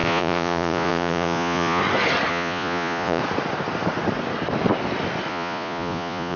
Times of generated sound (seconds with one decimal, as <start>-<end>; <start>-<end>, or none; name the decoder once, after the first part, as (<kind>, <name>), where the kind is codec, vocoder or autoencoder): 0.0-1.8 (vocoder, Vocos); 2.3-3.2; 5.3-6.4